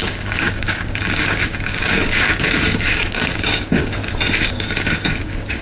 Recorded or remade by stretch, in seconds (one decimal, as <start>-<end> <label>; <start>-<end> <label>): 0.0-4.0 remade; 4.0-4.5 recorded; 4.5-5.6 remade